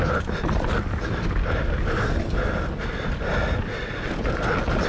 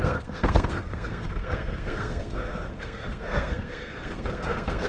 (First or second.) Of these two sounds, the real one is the first